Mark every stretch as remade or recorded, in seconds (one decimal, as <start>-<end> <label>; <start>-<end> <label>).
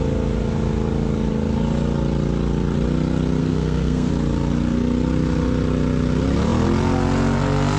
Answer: 0.0-3.4 recorded; 3.4-4.1 remade; 4.1-7.8 recorded